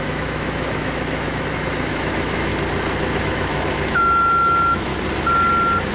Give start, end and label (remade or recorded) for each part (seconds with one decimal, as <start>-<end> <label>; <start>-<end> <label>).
0.0-2.5 remade; 2.5-3.2 recorded; 3.2-4.9 remade; 4.9-5.9 recorded